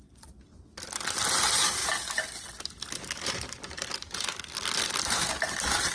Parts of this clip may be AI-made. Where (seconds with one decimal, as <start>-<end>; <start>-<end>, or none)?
none